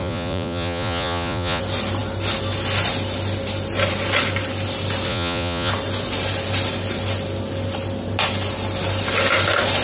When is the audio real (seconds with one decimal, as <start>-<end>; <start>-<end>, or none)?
1.6-5.1; 5.7-9.8